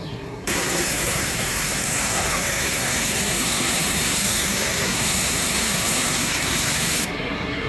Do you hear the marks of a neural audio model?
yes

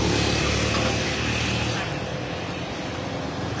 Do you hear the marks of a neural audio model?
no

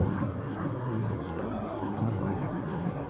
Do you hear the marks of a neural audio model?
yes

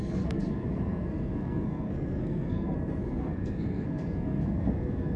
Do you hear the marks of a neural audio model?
yes